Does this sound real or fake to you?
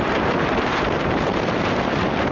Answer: fake